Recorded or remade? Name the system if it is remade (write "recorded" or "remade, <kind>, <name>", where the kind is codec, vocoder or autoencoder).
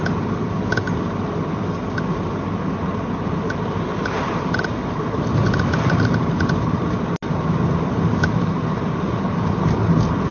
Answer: recorded